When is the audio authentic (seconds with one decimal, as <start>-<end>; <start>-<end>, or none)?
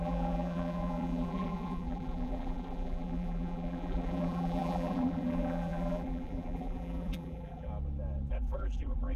7.7-8.3